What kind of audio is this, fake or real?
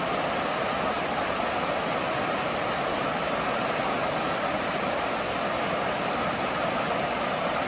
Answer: real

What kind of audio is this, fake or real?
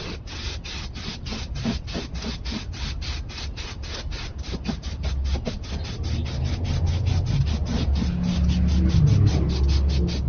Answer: real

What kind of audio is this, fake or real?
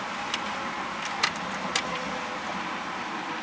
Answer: real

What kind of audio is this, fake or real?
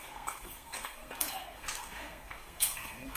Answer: fake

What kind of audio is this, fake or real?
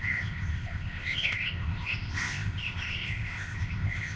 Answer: fake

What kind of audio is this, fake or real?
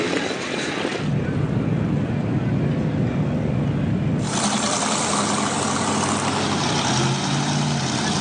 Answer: real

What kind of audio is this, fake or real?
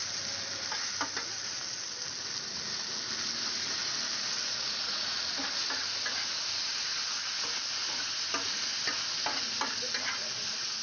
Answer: real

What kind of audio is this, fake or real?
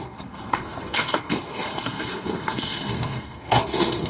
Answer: fake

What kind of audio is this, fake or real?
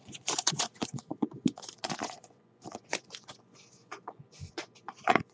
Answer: fake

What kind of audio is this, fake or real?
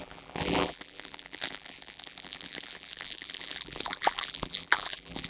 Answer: fake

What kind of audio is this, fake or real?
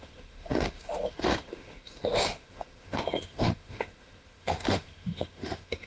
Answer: fake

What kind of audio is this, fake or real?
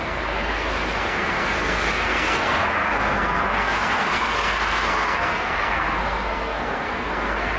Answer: fake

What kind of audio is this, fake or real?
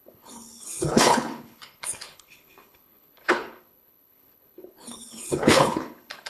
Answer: fake